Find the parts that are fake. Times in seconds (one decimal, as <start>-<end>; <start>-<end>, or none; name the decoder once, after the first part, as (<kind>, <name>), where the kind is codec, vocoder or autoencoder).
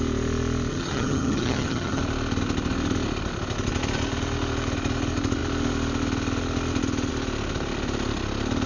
0.7-2.0 (vocoder, HiFi-GAN)